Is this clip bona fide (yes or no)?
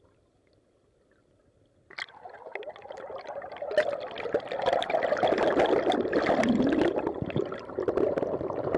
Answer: yes